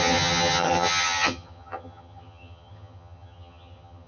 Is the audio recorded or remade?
remade